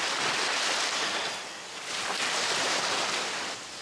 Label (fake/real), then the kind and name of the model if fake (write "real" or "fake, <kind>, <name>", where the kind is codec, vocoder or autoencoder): real